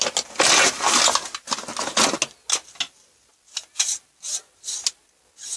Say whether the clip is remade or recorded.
recorded